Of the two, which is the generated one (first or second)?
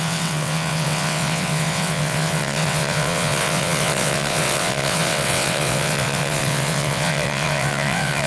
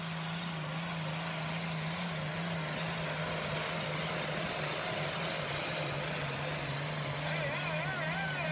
first